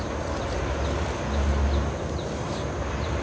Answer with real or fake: real